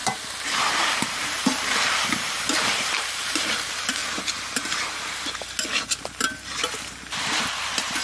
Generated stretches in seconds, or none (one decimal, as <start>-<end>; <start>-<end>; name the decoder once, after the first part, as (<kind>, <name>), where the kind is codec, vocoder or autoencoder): 0.0-4.0 (vocoder, BigVGAN v2); 7.2-8.0